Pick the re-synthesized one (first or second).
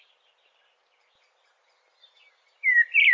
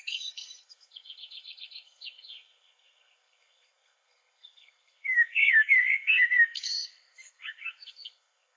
second